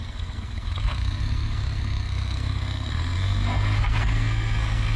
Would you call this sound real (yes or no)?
no